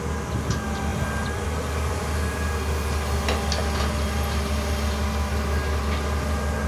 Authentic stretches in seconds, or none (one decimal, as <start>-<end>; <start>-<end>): 0.0-0.9; 2.0-6.7